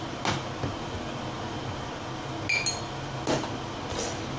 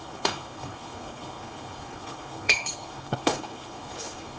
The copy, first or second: second